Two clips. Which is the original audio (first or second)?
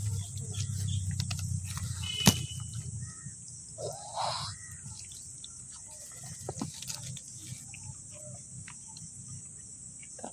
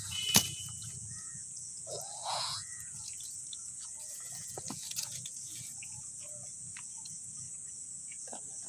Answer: first